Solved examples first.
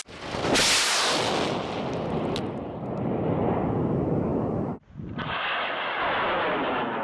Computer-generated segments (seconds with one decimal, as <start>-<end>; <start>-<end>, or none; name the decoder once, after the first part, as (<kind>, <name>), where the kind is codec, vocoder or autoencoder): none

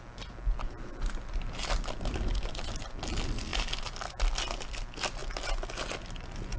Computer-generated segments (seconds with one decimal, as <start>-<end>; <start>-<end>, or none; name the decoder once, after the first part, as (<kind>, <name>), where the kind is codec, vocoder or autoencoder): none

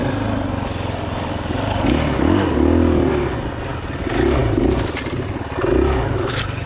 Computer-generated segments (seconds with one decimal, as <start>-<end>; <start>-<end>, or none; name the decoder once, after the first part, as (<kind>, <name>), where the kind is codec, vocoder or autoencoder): none

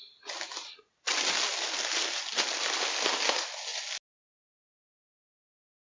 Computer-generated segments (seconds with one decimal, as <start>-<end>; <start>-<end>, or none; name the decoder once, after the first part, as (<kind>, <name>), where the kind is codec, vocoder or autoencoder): none

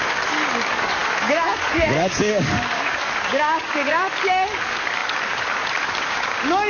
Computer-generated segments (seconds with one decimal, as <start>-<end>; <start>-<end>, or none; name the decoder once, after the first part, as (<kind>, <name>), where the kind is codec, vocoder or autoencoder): 0.0-6.7 (codec, DAC)

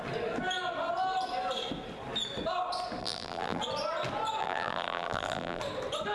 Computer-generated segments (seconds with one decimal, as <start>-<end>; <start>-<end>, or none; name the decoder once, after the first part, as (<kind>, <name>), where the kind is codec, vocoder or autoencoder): 3.0-3.6 (vocoder, BigVGAN v2); 4.4-5.6